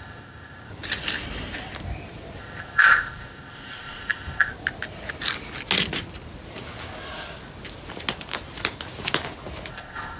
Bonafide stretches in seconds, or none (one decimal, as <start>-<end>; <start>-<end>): 0.7-2.4; 4.5-9.7